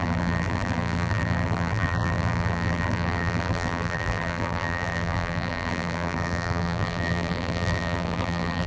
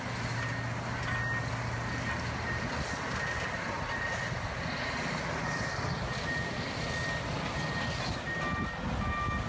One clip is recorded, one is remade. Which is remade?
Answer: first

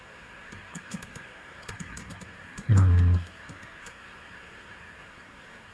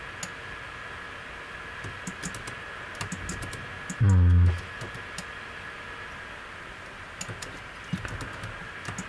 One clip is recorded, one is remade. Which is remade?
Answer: first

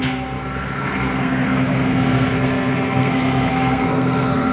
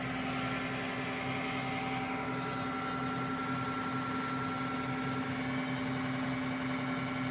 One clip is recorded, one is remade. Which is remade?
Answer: first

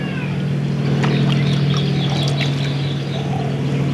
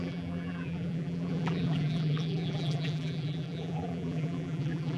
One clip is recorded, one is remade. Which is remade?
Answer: second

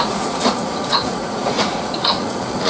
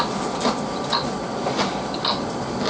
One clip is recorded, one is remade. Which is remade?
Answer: first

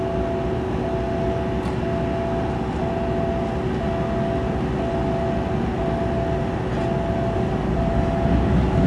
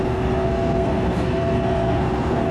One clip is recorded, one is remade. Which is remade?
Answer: second